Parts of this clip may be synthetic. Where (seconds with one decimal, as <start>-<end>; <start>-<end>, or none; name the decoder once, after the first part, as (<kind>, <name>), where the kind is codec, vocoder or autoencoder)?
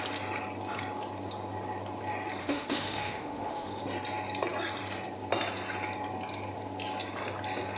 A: 2.4-3.8 (autoencoder, DAC-VAE)